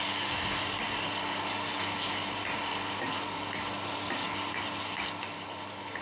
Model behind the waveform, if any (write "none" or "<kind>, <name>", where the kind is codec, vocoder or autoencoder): none